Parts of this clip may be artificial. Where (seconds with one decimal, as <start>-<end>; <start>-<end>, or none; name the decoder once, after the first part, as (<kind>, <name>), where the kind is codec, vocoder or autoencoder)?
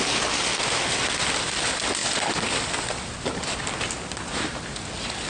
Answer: none